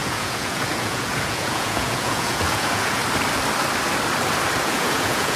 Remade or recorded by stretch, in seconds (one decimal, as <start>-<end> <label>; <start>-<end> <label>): 0.0-3.0 remade; 3.0-4.6 recorded; 4.6-5.4 remade